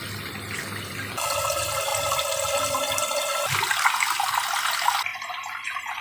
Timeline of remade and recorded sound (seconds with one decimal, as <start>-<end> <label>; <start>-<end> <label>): 0.0-6.0 recorded